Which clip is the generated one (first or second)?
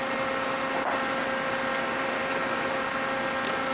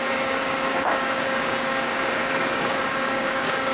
second